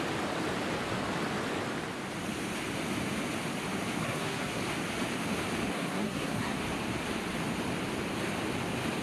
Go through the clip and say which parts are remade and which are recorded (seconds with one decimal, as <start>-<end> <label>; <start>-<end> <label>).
0.0-4.0 recorded; 4.0-4.6 remade; 4.6-5.7 recorded; 5.7-6.6 remade; 6.6-9.0 recorded